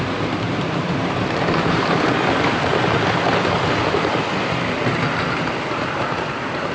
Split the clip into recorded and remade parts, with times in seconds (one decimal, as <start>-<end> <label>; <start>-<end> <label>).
0.0-2.7 remade; 2.7-5.7 recorded; 5.7-6.7 remade